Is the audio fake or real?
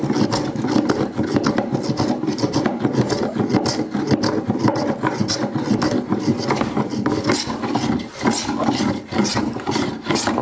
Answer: real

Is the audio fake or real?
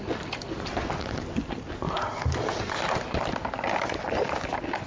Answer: real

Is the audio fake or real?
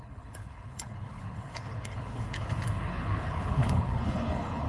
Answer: fake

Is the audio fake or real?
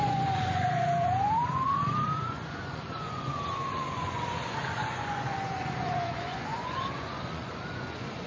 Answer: fake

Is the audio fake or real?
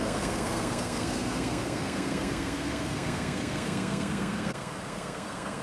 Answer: fake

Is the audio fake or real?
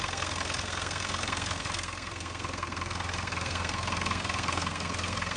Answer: fake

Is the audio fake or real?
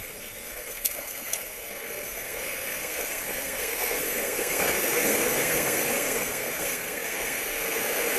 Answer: fake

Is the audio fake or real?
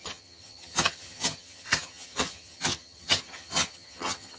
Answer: fake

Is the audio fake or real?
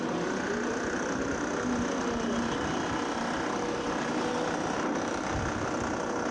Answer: real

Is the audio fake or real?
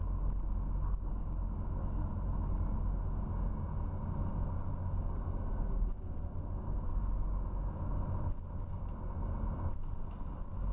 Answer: real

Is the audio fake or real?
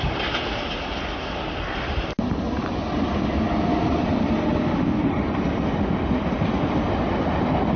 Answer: real